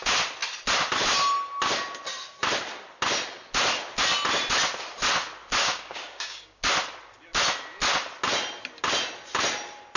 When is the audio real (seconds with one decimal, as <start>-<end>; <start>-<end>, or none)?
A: 0.0-5.6; 6.6-10.0